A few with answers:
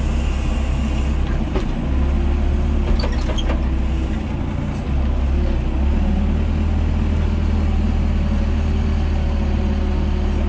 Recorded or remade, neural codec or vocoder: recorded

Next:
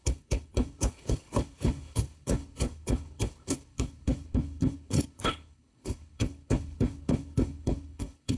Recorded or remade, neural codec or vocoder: remade, codec, HILCodec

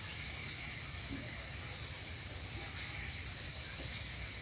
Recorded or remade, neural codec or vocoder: recorded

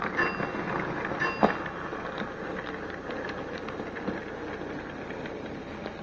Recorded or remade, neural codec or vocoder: recorded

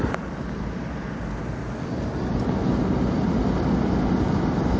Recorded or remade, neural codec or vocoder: recorded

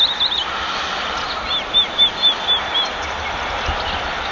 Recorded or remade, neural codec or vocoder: recorded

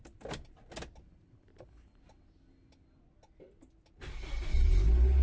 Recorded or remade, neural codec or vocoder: recorded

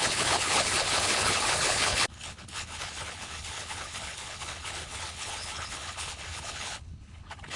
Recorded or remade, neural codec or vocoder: remade, codec, HILCodec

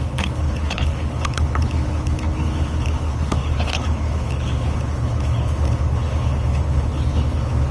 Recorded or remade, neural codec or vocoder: remade, codec, HILCodec